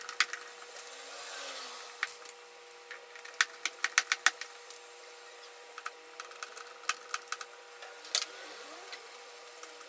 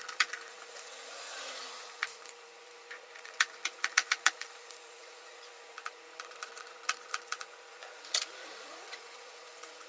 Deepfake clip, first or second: second